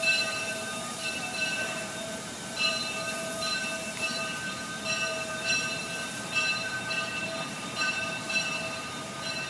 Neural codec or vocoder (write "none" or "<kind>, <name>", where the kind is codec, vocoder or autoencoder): vocoder, BigVGAN v2